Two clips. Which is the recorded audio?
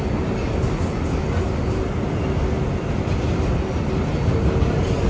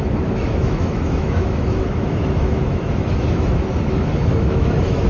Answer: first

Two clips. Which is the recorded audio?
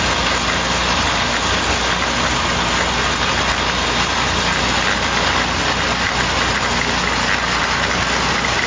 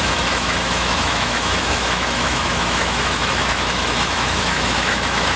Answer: first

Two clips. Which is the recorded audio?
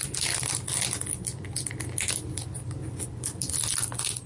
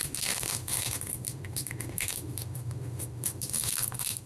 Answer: first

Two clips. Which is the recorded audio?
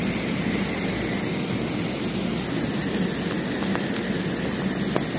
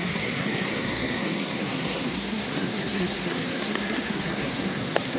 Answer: first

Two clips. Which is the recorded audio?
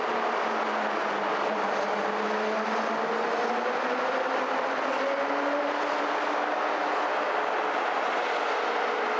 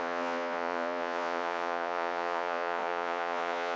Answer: first